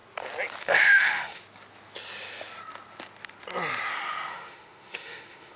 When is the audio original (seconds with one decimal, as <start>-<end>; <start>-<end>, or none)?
0.0-0.6; 1.4-3.9